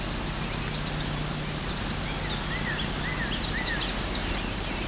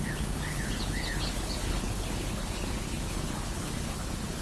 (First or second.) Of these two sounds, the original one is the first